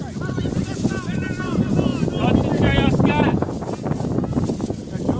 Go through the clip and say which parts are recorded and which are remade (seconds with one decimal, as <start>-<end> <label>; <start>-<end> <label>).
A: 0.0-5.2 recorded

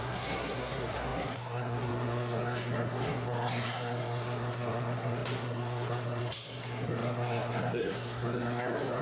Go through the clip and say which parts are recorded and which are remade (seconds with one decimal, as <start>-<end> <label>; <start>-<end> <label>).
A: 0.0-9.0 remade

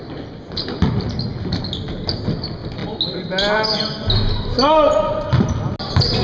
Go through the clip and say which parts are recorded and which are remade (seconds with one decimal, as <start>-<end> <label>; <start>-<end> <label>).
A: 0.0-6.2 recorded

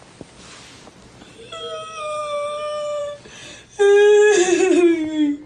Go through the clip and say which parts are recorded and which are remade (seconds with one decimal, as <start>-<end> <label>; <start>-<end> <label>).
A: 0.0-5.5 recorded

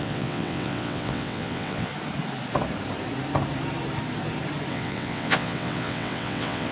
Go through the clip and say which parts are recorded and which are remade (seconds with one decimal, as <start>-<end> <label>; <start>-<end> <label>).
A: 0.0-1.9 remade; 1.9-4.7 recorded; 4.7-6.7 remade

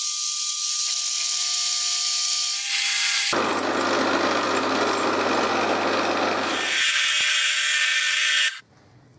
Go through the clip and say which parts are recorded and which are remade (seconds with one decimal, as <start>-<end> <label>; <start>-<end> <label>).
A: 0.0-9.2 recorded